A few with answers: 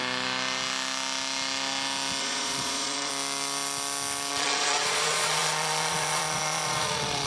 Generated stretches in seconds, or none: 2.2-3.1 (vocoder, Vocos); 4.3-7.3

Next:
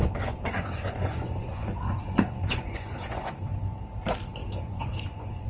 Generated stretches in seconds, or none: 0.0-3.3 (vocoder, Vocos); 4.4-5.5

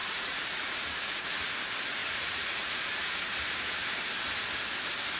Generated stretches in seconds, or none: 0.0-1.5 (vocoder, Vocos); 2.0-2.7

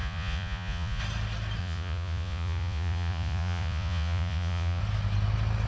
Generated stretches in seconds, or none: 0.0-1.0 (vocoder, Vocos); 1.6-4.8

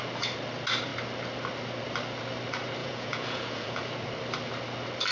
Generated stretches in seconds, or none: 2.8-3.8 (vocoder, Vocos)

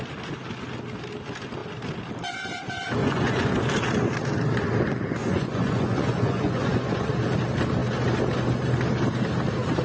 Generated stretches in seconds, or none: 3.0-3.5 (vocoder, Vocos); 5.2-7.1